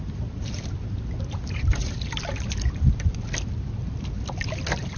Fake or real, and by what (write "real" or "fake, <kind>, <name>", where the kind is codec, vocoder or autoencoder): real